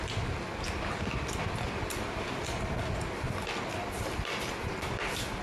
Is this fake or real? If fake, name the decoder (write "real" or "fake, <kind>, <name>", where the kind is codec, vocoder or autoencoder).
real